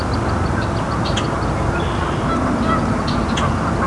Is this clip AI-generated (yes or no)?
no